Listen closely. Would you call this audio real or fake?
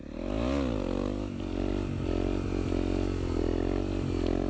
real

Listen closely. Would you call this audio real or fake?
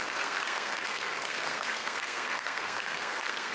fake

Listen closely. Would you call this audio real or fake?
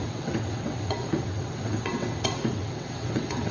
fake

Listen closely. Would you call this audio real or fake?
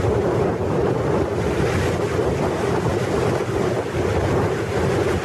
real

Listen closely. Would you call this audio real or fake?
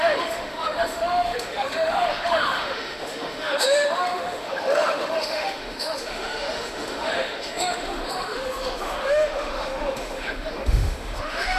fake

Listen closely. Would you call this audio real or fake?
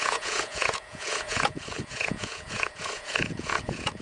fake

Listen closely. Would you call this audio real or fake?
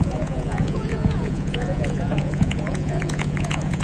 fake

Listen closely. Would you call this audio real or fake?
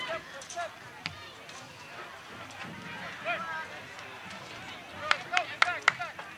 real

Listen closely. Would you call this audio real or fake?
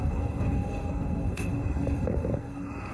fake